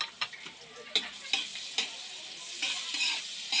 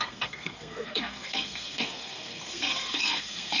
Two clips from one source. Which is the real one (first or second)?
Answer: first